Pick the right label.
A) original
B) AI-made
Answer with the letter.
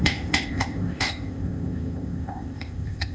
B